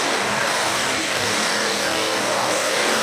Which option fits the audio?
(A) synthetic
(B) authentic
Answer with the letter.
A